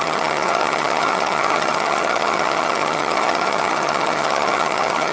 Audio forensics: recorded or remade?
remade